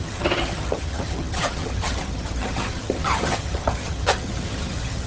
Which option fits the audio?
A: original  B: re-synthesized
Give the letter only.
B